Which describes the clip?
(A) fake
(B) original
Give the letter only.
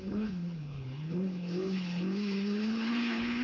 A